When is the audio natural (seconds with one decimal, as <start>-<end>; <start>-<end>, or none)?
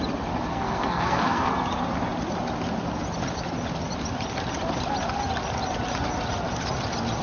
0.0-0.5; 1.5-7.2